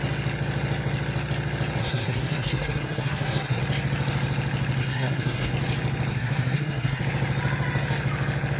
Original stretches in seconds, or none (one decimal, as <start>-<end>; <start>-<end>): 0.0-1.8; 3.6-4.8; 5.5-6.1; 7.0-8.6